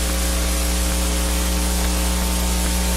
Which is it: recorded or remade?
recorded